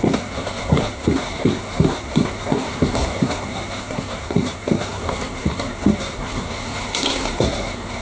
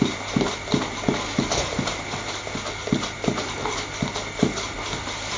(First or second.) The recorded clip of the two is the second